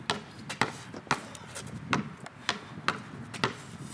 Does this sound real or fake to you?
real